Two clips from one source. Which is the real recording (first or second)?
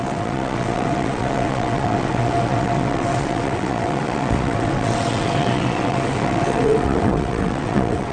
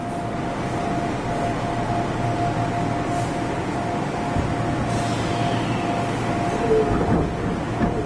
second